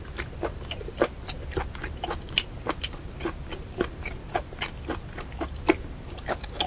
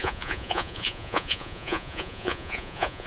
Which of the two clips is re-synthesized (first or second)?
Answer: second